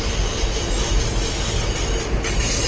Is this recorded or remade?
recorded